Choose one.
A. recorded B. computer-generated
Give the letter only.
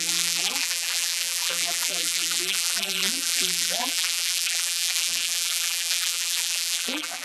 B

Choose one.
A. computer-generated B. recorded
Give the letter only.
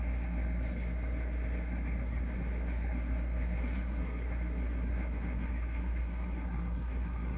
A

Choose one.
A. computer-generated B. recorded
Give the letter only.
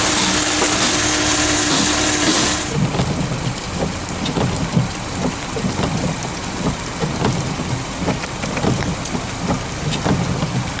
B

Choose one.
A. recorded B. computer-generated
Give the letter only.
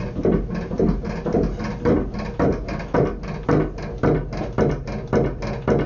A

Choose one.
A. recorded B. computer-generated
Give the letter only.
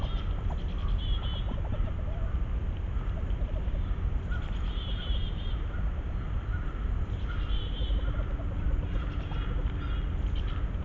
A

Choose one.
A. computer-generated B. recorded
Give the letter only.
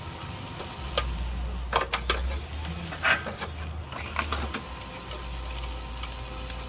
B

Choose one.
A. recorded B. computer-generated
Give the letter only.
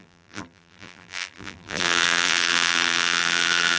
B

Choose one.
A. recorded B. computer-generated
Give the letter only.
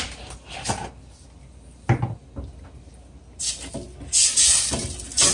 A